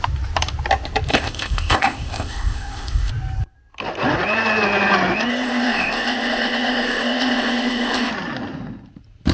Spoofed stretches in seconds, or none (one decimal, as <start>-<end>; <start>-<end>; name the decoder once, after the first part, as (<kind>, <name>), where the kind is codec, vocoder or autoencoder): 1.1-3.1 (codec, ZipCodec); 5.3-8.1